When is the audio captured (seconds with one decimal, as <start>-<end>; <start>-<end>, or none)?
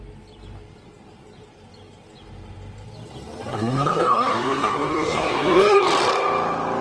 0.0-3.5; 5.8-6.8